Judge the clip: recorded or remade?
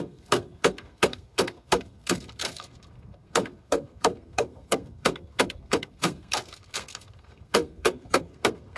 remade